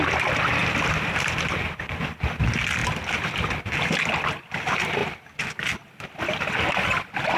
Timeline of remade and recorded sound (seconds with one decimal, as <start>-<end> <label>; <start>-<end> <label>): 0.0-0.6 recorded; 0.6-2.3 remade; 2.3-7.4 recorded